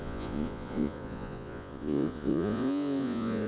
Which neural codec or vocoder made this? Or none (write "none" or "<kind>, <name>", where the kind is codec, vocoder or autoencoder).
vocoder, Vocos